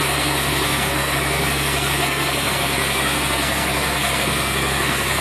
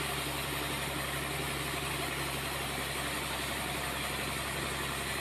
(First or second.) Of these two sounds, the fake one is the first